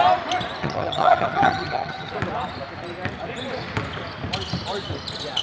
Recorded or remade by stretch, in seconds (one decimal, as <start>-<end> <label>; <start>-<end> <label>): 0.0-0.6 recorded; 0.6-2.1 remade; 2.1-5.4 recorded